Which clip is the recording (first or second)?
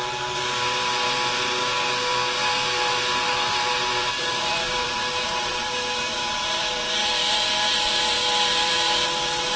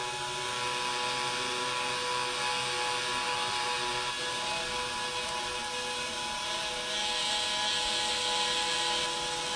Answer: second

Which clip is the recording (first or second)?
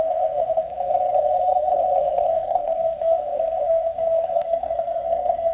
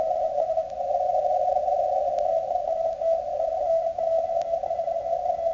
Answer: second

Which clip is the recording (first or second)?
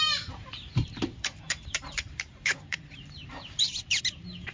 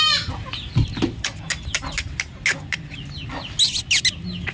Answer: second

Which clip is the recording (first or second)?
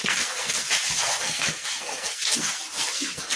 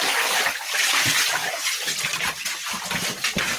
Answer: second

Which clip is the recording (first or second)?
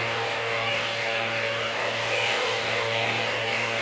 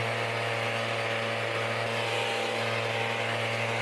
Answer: second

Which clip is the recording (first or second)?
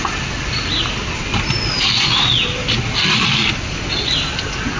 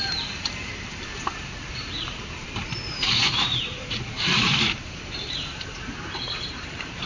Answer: first